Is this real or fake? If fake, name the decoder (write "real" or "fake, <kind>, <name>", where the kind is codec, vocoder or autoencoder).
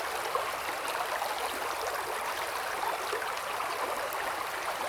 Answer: real